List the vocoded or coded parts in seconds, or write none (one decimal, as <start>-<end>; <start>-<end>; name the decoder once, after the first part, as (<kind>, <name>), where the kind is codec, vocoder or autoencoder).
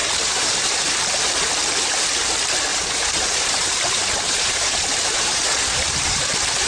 0.0-1.1 (vocoder, BigVGAN v2); 2.7-6.2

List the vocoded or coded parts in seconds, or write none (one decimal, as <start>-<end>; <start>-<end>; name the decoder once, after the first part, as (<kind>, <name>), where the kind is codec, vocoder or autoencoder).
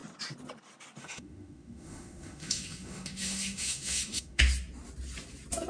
1.0-4.4 (autoencoder, DAC-VAE)